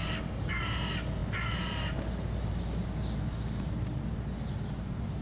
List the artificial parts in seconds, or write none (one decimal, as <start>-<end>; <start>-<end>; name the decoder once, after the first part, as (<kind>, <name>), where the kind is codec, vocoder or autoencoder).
0.0-0.6 (codec, DAC)